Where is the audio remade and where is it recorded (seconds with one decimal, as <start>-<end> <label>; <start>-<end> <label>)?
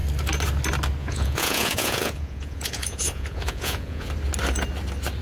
0.0-1.0 recorded; 1.0-4.1 remade; 4.1-5.2 recorded